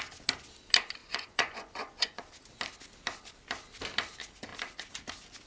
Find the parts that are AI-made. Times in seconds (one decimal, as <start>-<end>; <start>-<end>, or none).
1.0-2.2